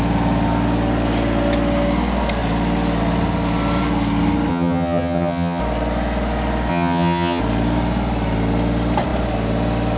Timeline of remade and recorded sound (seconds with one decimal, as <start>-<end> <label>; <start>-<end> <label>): 0.0-4.5 recorded; 4.5-5.6 remade; 5.6-6.7 recorded; 6.7-7.4 remade; 7.4-10.0 recorded